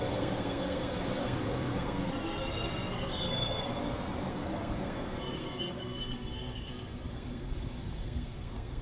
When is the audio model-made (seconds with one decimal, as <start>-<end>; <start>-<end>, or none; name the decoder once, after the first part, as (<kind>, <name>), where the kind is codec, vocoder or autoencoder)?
0.0-3.7 (codec, SNAC); 4.3-8.8